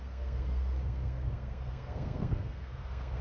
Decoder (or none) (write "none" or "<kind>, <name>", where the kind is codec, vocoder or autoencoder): codec, SNAC